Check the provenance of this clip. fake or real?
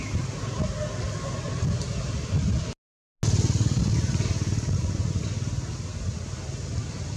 real